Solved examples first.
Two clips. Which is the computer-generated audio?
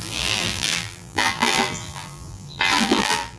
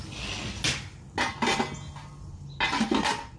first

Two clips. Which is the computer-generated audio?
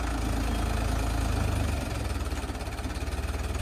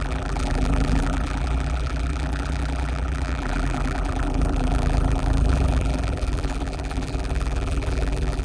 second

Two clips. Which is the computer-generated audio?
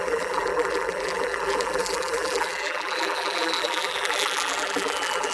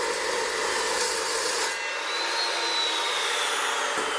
first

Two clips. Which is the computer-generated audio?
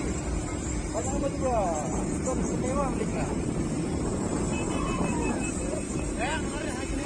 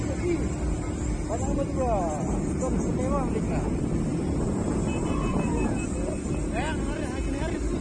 first